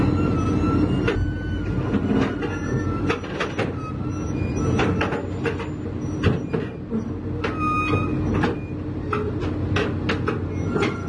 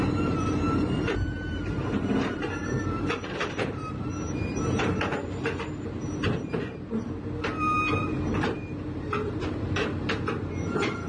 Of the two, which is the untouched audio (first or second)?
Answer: first